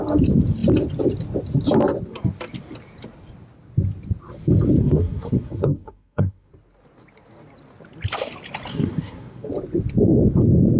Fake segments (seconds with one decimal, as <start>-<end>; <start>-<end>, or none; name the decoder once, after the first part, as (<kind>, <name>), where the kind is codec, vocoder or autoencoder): 4.8-6.5 (codec, SNAC); 8.7-9.5

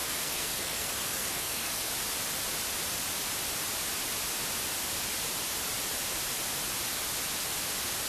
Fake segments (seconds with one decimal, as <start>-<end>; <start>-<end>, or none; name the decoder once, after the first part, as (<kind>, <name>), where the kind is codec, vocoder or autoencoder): 0.0-1.9 (codec, SNAC)

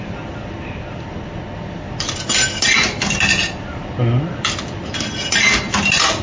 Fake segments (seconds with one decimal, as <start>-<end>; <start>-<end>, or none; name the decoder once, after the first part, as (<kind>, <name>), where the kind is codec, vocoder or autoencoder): none

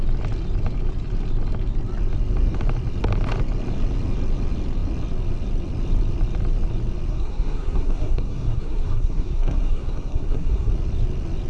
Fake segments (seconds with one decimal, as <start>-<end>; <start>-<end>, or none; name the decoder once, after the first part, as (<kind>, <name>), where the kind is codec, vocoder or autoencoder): 7.1-10.7 (codec, SNAC)